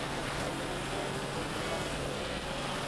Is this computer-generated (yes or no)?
yes